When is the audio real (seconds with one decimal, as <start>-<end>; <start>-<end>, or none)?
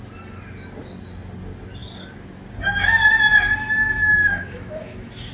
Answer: 0.0-3.3